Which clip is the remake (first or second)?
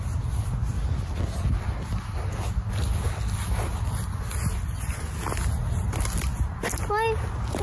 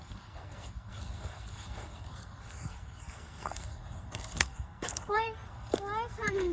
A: second